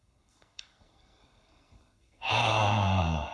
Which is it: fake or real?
fake